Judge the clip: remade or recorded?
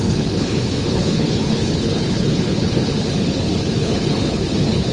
remade